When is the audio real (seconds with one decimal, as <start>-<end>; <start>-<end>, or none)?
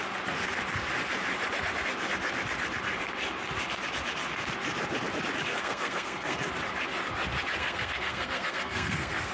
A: 0.0-5.5; 6.4-7.6